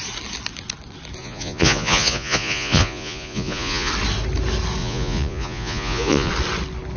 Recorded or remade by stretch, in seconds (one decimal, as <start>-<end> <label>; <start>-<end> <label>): 0.0-1.2 recorded; 1.2-3.9 remade; 3.9-4.8 recorded; 4.8-6.3 remade; 6.3-7.0 recorded